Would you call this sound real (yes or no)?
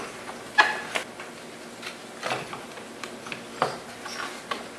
yes